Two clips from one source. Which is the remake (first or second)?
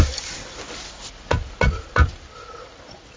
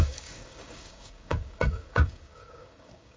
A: second